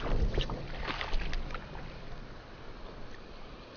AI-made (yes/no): no